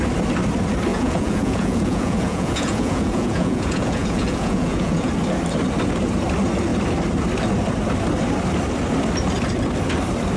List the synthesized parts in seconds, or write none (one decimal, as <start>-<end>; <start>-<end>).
0.9-5.1